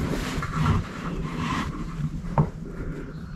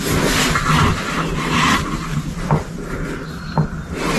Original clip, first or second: second